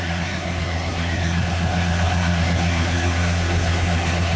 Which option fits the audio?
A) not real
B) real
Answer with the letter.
A